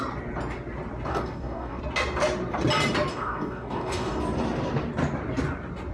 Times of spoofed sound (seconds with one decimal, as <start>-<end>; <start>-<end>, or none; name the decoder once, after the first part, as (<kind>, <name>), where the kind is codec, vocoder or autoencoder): 1.1-1.8 (codec, DAC); 3.1-4.2